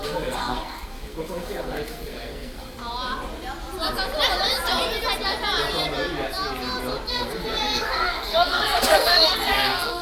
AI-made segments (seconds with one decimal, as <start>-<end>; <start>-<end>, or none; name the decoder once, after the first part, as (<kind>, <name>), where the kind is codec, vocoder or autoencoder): 0.0-2.8 (codec, SNAC); 7.1-10.0